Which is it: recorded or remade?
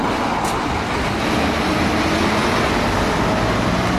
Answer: recorded